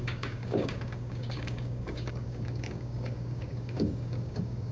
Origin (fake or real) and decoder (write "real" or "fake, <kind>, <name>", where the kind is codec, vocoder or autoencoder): fake, codec, DAC